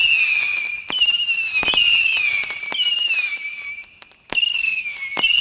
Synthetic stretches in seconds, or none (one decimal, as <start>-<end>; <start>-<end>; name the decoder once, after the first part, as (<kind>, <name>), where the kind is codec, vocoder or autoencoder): 4.4-5.0 (codec, SNAC)